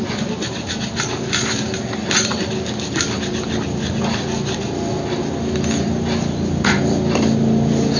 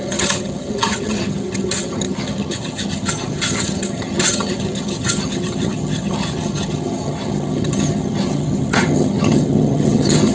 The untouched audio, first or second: first